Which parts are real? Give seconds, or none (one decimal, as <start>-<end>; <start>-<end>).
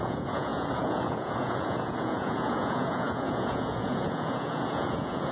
none